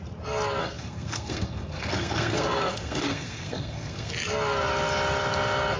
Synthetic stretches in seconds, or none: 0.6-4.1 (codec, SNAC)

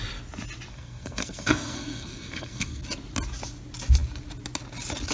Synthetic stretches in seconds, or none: 0.7-2.8 (codec, SNAC)

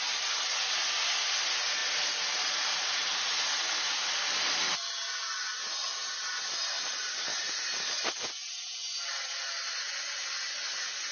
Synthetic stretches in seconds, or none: none

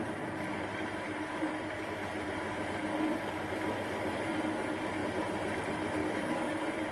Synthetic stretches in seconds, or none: 6.0-6.5 (codec, DAC)

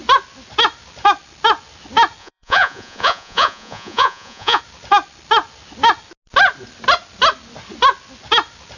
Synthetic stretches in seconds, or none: 2.2-4.6 (vocoder, Vocos)

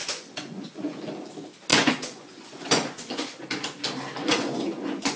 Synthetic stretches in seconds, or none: 0.0-1.0 (vocoder, Vocos); 1.7-3.4; 4.2-5.2

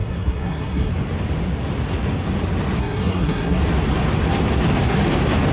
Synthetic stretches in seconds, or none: 0.0-0.9 (codec, SNAC); 2.8-3.6